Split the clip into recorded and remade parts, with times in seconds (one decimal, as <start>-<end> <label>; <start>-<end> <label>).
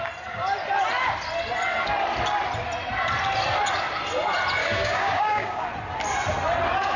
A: 0.0-4.6 recorded; 4.6-5.7 remade; 5.7-7.0 recorded